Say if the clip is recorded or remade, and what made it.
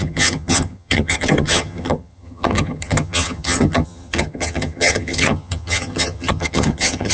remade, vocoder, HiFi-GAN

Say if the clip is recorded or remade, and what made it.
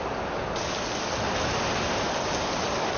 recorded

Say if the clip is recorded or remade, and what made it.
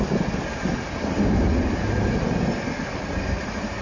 recorded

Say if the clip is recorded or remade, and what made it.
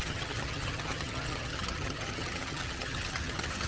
remade, vocoder, HiFi-GAN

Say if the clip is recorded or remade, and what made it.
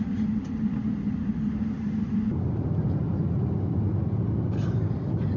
recorded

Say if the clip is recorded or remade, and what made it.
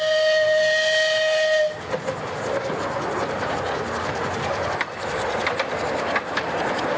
recorded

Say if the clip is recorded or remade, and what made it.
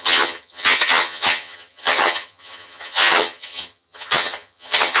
remade, vocoder, HiFi-GAN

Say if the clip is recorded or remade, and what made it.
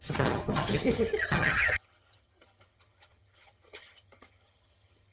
remade, vocoder, HiFi-GAN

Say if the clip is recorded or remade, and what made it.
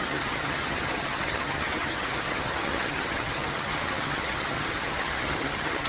remade, vocoder, HiFi-GAN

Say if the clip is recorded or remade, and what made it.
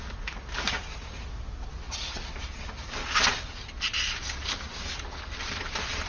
recorded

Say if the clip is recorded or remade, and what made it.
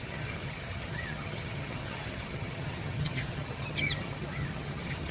remade, vocoder, HiFi-GAN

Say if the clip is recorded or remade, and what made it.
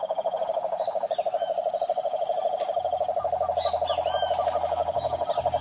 recorded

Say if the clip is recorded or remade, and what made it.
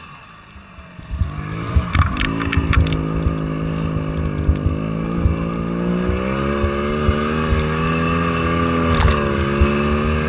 recorded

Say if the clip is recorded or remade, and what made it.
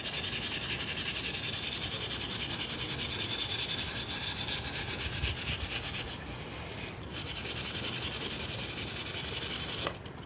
recorded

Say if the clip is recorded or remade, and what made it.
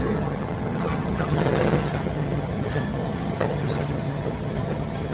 remade, vocoder, HiFi-GAN